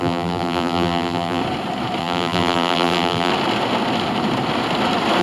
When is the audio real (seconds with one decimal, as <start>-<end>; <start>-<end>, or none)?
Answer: 1.4-2.0; 3.3-5.2